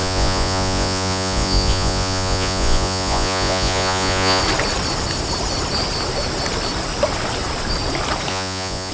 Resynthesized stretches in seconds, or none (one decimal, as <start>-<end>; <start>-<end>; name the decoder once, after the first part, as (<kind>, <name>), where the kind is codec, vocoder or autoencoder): 0.0-4.4 (vocoder, Vocos); 8.3-8.9